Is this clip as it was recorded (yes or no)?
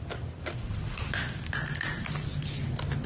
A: yes